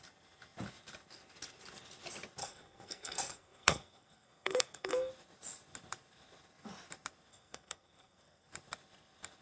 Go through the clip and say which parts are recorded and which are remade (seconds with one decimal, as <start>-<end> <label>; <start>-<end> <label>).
0.0-2.4 recorded; 2.4-5.1 remade; 5.1-7.3 recorded; 7.3-8.5 remade; 8.5-9.4 recorded

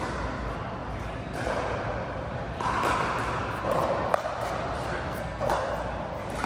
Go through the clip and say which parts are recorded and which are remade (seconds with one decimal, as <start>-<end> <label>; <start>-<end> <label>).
0.0-4.9 recorded; 4.9-5.5 remade; 5.5-6.5 recorded

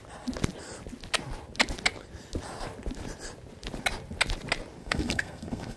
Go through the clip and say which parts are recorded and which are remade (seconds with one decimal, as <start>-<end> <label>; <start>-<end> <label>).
0.0-4.8 recorded; 4.8-5.8 remade

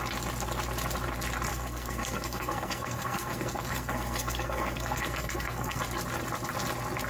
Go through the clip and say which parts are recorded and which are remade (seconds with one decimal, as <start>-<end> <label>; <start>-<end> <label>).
0.0-1.5 recorded; 1.5-5.8 remade; 5.8-7.1 recorded

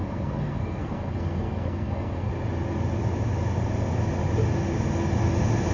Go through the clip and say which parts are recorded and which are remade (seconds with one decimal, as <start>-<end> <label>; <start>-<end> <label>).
0.0-2.3 remade; 2.3-5.7 recorded

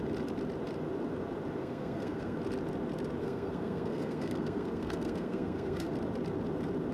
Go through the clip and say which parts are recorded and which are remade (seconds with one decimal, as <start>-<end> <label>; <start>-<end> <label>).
0.0-1.6 recorded; 1.6-2.4 remade; 2.4-3.2 recorded; 3.2-5.9 remade; 5.9-6.9 recorded

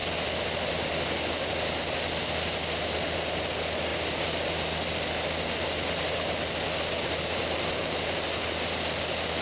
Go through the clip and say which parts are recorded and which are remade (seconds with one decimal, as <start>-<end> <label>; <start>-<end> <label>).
0.0-9.4 recorded

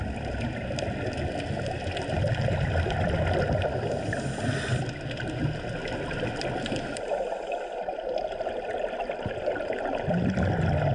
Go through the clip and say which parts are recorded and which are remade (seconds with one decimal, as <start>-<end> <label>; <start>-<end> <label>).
0.0-10.9 recorded